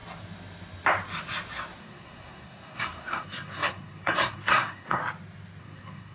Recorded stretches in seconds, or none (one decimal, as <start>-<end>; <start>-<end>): 0.0-1.8; 5.0-5.6